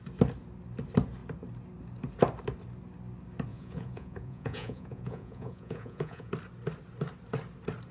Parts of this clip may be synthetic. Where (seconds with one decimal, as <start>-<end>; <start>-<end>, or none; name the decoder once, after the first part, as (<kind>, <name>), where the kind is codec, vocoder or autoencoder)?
3.5-6.3 (vocoder, Vocos)